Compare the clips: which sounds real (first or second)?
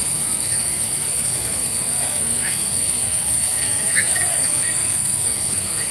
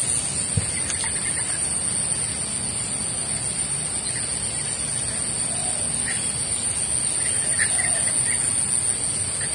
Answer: second